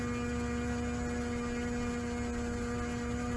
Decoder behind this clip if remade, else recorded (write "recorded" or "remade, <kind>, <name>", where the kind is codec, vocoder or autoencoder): recorded